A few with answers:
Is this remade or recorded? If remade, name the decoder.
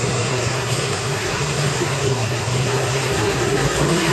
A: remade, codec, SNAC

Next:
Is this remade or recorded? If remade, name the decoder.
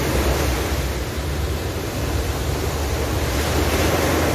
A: recorded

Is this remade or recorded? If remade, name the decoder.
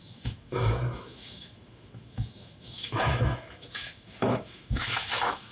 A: remade, autoencoder, DAC-VAE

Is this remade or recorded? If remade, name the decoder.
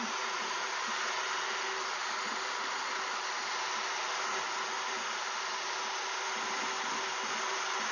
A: recorded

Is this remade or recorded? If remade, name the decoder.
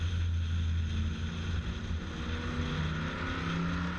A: recorded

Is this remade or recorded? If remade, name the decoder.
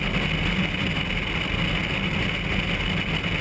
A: recorded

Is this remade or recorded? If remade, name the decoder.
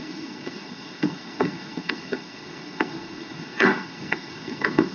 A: remade, codec, SNAC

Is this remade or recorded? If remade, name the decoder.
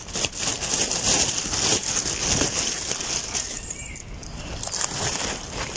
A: recorded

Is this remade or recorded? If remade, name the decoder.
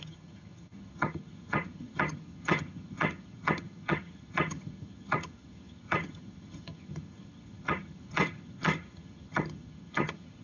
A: remade, vocoder, HiFi-GAN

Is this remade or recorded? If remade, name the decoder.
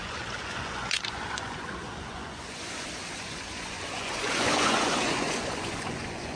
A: remade, vocoder, Vocos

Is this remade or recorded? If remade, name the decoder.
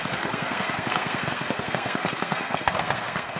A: remade, codec, SNAC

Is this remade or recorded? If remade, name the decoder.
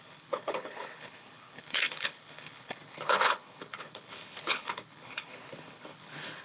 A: remade, codec, HILCodec